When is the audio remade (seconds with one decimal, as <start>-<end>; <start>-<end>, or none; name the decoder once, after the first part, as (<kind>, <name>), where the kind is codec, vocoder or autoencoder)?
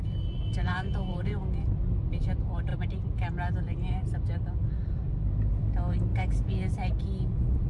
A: 0.7-1.7 (vocoder, Vocos); 6.1-6.7